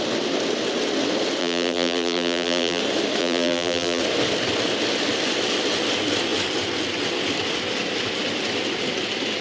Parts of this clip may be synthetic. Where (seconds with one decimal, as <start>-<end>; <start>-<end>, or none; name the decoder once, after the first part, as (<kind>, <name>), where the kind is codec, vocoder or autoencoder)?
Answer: 1.4-2.8 (vocoder, BigVGAN v2); 3.2-4.0